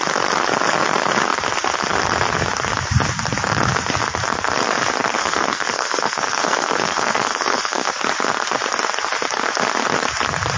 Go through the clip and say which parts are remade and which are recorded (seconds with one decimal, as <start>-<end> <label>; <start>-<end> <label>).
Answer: 0.0-5.2 recorded; 5.2-7.9 remade; 7.9-10.6 recorded